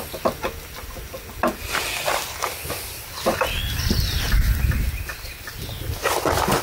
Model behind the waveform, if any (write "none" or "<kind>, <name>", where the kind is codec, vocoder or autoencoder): none